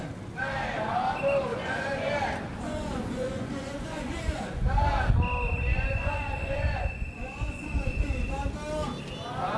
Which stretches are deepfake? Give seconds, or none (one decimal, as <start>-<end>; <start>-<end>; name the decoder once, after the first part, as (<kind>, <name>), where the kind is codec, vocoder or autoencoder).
1.5-2.1 (vocoder, Vocos); 2.5-4.9; 5.7-8.1